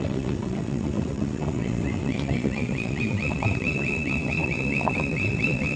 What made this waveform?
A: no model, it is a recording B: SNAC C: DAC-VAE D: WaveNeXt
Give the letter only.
D